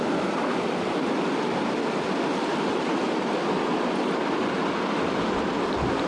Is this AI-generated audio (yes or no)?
no